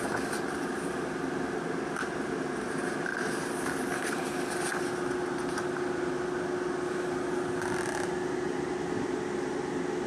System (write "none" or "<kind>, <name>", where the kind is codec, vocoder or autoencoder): none